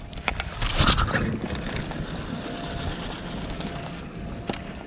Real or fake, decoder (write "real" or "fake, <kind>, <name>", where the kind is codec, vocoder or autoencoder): real